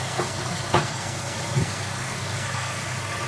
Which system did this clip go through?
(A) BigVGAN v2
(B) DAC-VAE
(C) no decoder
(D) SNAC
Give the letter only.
D